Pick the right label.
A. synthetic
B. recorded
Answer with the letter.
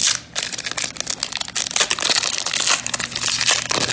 B